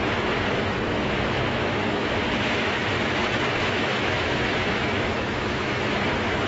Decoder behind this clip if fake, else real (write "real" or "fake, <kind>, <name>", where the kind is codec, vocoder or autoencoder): fake, autoencoder, DAC-VAE